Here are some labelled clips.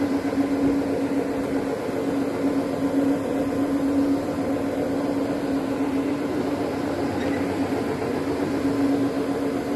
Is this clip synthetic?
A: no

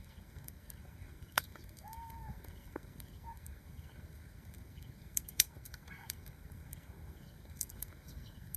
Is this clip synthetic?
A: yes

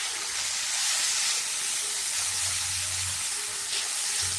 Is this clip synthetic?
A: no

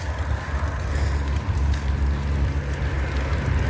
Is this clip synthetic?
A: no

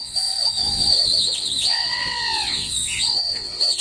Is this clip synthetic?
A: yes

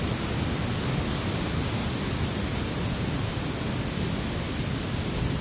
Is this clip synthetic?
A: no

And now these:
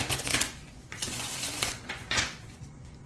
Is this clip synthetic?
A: yes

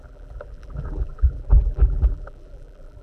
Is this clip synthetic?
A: yes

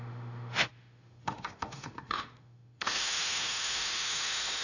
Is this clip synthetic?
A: yes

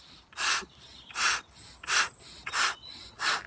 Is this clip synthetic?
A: no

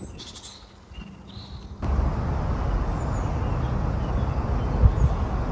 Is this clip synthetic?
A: no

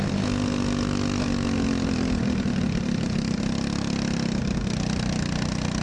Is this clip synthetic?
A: no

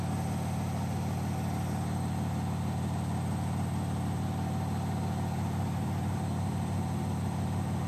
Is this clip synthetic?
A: no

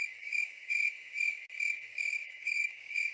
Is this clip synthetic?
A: yes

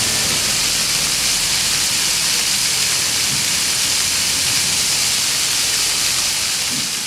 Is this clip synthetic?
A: no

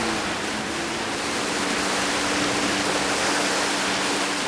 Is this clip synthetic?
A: no